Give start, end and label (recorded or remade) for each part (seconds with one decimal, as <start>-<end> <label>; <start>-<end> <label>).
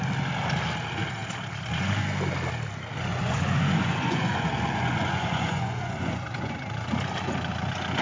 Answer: 0.0-3.1 recorded; 3.1-6.5 remade; 6.5-8.0 recorded